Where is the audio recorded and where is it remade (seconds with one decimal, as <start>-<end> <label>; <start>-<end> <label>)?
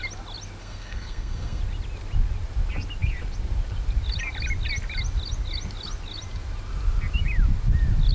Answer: 0.0-0.6 recorded; 0.6-1.6 remade; 1.6-8.1 recorded